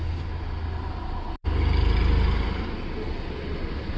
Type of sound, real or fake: real